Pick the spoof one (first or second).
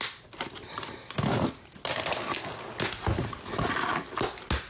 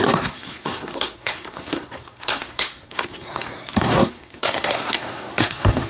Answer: second